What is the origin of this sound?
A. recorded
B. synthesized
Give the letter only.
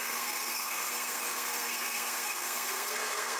B